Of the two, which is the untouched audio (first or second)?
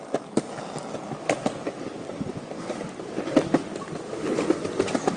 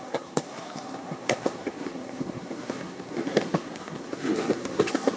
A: first